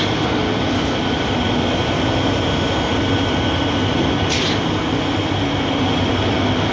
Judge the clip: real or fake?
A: real